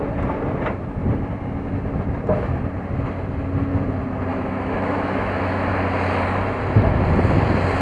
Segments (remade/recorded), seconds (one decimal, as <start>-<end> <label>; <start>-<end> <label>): 0.0-4.3 recorded; 4.3-5.7 remade; 5.7-7.8 recorded